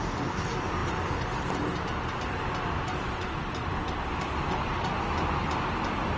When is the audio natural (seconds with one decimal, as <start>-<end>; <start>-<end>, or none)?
0.0-6.2